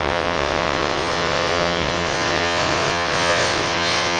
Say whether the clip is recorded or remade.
remade